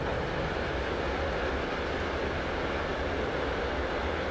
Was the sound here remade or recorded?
recorded